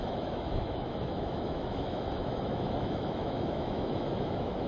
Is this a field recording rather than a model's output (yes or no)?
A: no